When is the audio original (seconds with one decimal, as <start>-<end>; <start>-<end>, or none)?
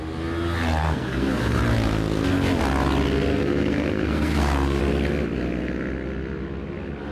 0.0-0.8; 1.6-3.3; 4.8-7.1